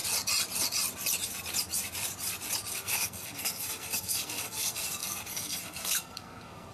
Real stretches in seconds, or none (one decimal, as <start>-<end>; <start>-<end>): 0.0-2.7